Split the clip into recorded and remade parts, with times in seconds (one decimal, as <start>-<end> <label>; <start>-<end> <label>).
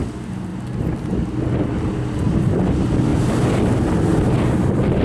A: 0.0-5.0 recorded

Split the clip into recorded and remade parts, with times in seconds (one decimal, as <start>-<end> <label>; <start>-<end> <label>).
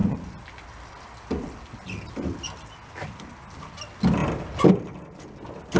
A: 0.0-5.8 recorded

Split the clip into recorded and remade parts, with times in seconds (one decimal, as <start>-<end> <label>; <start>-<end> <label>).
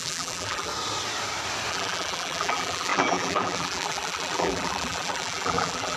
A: 0.0-0.7 remade; 0.7-1.7 recorded; 1.7-6.0 remade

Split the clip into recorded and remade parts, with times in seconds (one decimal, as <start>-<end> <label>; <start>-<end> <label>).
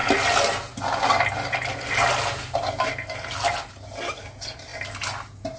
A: 0.0-5.6 recorded